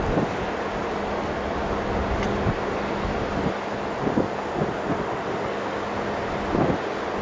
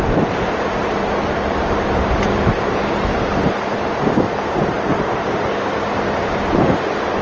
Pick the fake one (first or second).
second